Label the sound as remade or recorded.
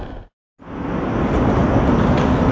recorded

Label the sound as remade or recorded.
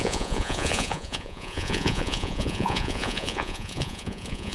remade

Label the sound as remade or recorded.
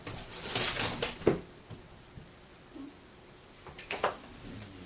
recorded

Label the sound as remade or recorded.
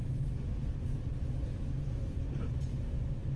recorded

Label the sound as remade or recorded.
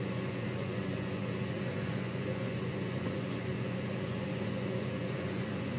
remade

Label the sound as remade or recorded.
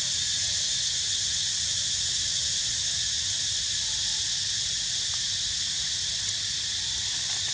recorded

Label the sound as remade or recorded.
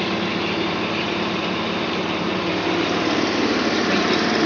remade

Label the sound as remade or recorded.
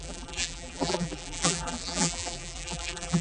remade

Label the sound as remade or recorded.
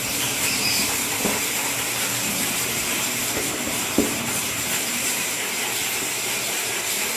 remade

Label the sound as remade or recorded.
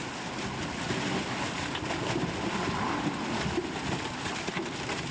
recorded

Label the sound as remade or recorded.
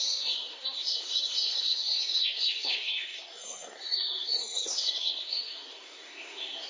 remade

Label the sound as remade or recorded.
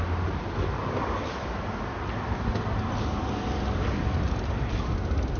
recorded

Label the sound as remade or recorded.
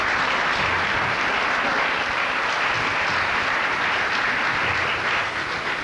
recorded